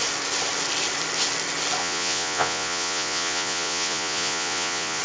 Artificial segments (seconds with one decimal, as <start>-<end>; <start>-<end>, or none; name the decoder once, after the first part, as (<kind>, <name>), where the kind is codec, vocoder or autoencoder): 1.8-5.0 (vocoder, Vocos)